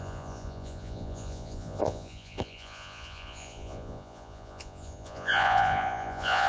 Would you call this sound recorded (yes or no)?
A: no